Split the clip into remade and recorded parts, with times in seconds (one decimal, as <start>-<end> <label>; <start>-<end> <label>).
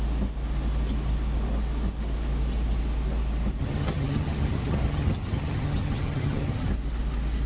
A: 0.0-3.6 recorded; 3.6-6.7 remade; 6.7-7.5 recorded